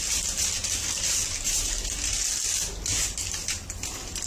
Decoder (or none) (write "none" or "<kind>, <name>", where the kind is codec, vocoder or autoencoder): none